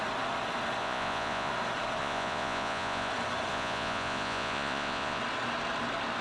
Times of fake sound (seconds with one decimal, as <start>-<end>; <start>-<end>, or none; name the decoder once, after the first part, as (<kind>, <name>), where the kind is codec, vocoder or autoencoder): 0.8-1.5 (vocoder, Vocos); 2.0-3.1; 3.5-5.2